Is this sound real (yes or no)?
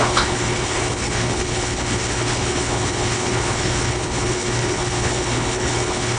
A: no